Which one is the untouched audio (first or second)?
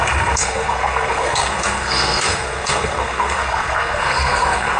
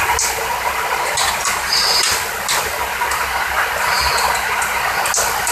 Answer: second